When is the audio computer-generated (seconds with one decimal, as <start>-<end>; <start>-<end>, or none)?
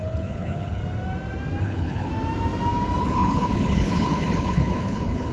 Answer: 0.0-0.8; 1.6-2.1; 3.0-5.3